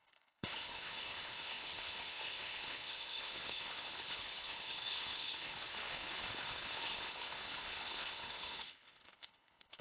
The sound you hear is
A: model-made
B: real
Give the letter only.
A